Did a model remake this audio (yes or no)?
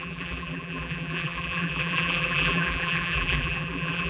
yes